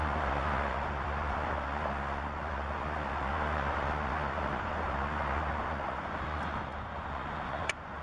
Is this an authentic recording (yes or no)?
no